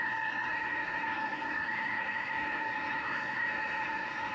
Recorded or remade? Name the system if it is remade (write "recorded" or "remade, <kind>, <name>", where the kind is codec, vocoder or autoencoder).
remade, codec, SNAC